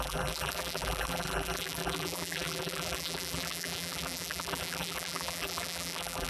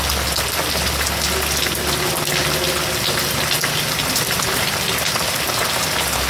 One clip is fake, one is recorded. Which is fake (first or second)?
first